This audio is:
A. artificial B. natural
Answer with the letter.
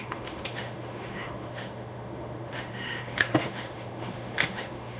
A